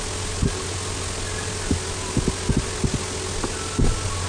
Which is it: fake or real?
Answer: real